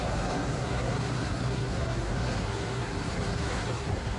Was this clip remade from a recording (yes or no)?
yes